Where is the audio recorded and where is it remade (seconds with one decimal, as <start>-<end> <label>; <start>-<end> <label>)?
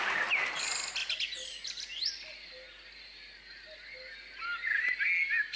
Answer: 0.0-5.6 recorded